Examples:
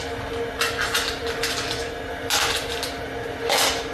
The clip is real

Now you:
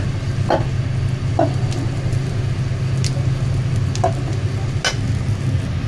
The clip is real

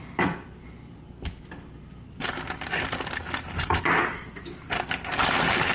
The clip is real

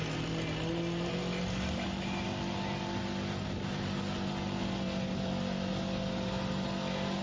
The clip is real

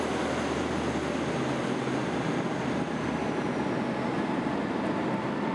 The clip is real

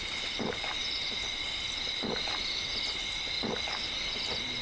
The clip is real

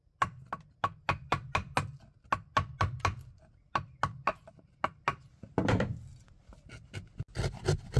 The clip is real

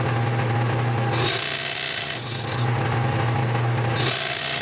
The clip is real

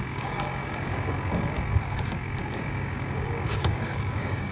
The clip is fake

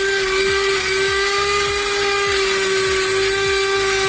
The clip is real